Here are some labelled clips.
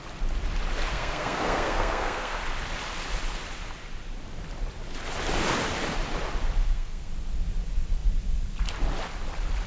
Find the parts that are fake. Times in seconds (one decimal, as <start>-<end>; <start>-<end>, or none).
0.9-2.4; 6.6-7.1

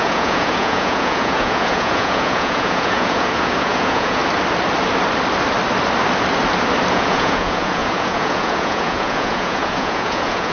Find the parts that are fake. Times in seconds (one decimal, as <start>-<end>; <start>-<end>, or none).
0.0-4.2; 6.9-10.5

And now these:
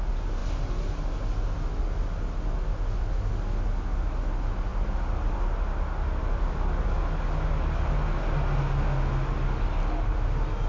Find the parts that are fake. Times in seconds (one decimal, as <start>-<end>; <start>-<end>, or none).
none

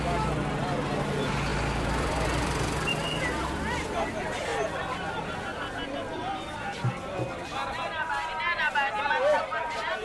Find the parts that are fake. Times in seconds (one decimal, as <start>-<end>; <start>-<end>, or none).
1.5-2.9